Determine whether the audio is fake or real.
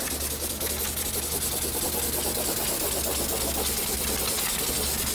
real